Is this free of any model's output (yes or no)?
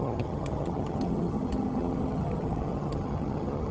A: no